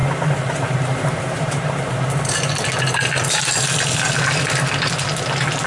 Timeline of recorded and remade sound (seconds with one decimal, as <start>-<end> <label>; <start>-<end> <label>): 0.0-2.4 remade; 2.4-5.7 recorded